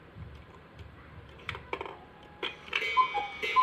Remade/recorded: remade